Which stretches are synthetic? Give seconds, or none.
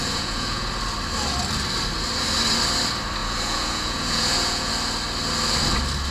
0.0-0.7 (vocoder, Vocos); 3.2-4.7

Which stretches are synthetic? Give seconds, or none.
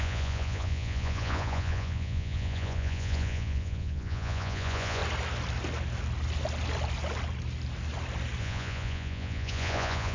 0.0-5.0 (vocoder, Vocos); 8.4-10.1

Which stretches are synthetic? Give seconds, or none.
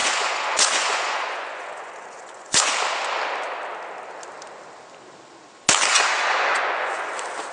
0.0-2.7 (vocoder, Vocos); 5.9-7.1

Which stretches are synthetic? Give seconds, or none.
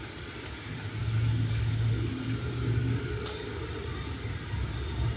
1.0-2.1 (codec, DAC); 2.8-3.7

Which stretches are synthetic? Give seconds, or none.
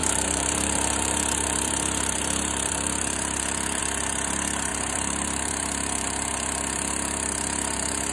0.0-3.8 (vocoder, BigVGAN v2); 4.7-5.5